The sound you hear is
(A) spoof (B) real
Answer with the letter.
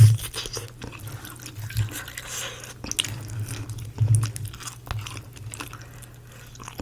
B